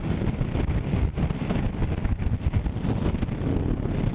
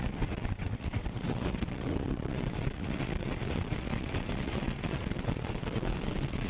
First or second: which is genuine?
first